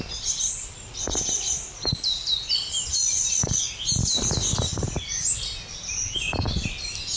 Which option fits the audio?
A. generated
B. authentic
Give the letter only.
B